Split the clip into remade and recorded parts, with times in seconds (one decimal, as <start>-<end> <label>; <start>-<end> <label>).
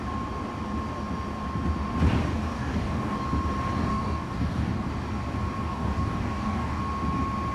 0.0-2.3 recorded; 2.3-3.2 remade; 3.2-3.9 recorded; 3.9-4.9 remade; 4.9-5.6 recorded; 5.6-6.8 remade; 6.8-7.5 recorded